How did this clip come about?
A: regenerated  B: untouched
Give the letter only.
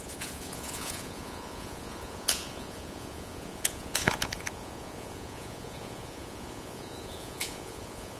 A